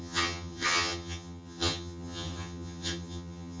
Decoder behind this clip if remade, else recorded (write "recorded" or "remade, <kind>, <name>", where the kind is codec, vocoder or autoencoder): remade, vocoder, HiFi-GAN